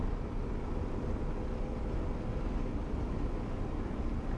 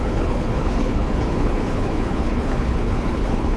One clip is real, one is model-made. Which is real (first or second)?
first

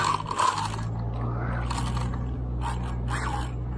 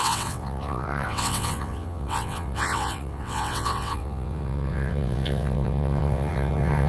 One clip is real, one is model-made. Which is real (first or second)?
first